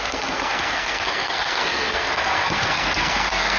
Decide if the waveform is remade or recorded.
remade